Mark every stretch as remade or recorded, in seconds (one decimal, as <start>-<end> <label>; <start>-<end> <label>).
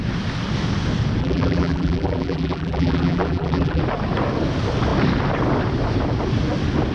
0.0-1.2 recorded; 1.2-3.8 remade; 3.8-6.9 recorded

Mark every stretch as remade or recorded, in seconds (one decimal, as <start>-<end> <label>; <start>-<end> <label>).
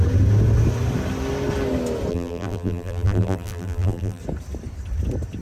0.0-2.1 recorded; 2.1-4.2 remade; 4.2-5.4 recorded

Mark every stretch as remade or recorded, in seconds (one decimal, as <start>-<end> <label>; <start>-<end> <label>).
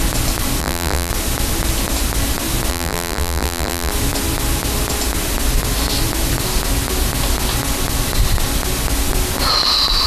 0.0-0.6 recorded; 0.6-1.1 remade; 1.1-2.7 recorded; 2.7-3.9 remade; 3.9-10.1 recorded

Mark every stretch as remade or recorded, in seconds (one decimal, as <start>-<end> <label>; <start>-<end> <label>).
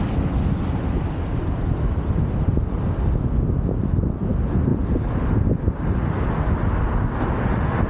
0.0-7.9 recorded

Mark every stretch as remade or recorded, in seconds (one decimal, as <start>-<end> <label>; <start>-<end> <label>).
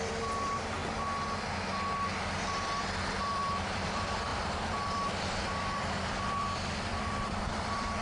0.0-0.8 remade; 0.8-2.5 recorded; 2.5-8.0 remade